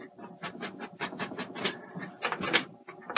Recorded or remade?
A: recorded